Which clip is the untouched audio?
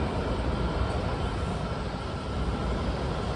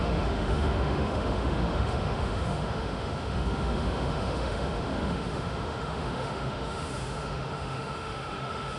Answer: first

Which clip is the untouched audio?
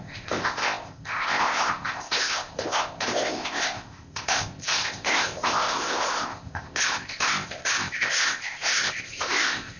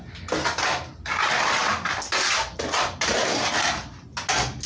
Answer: second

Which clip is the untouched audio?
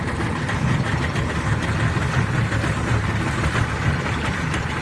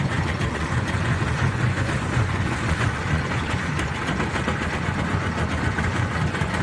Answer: first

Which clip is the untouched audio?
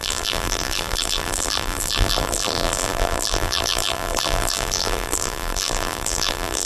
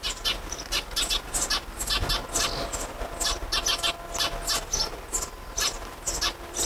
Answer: second